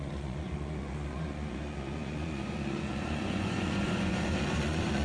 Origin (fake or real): fake